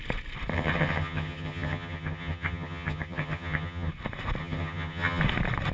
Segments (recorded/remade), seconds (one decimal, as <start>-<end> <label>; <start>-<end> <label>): 0.0-0.5 recorded; 0.5-3.9 remade; 3.9-4.4 recorded; 4.4-5.2 remade; 5.2-5.7 recorded